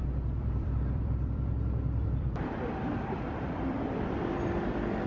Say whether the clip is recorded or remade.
remade